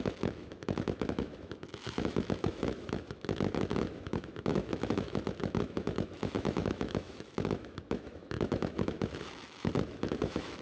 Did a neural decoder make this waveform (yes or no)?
yes